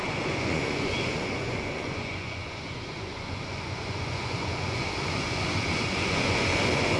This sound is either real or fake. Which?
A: fake